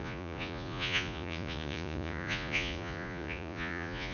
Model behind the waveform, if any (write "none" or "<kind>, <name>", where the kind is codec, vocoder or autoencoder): vocoder, Vocos